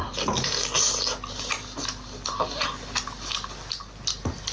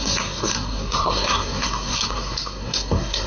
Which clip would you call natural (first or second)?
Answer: first